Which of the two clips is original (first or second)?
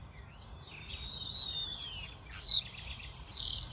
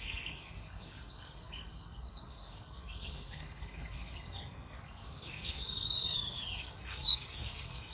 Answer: first